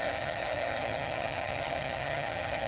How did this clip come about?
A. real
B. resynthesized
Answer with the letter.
B